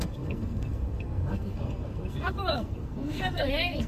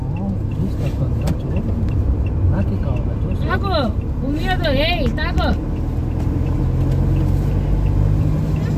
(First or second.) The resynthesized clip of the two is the first